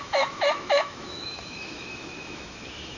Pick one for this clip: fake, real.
fake